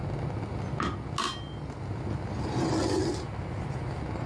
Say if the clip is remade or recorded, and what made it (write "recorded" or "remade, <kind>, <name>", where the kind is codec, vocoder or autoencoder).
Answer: recorded